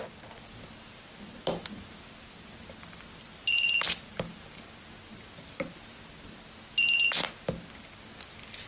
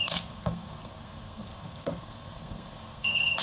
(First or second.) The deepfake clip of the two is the second